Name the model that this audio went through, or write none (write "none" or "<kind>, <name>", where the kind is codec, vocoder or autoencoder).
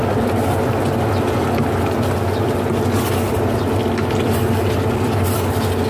none